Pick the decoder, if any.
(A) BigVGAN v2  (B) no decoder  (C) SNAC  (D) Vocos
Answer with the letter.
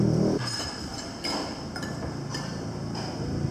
B